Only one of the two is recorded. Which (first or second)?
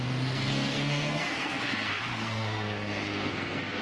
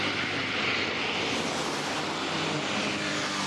second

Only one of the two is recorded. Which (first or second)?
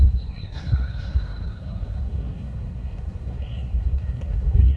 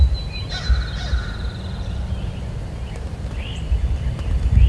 second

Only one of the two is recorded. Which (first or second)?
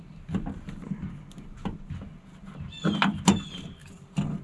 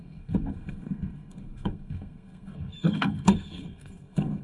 first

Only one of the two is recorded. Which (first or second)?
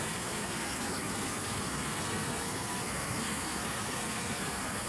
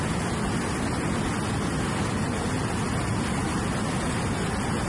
second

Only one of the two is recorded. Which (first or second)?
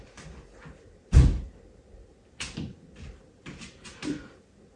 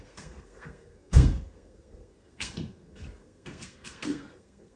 first